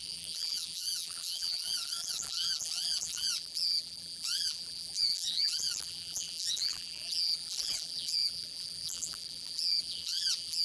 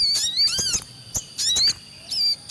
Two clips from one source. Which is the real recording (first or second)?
second